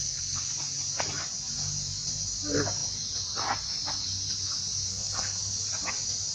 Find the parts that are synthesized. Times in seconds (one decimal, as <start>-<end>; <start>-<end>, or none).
0.0-0.5; 4.9-5.4